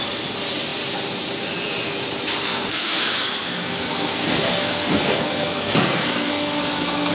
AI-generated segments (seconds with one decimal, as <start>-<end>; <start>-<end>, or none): 2.4-7.1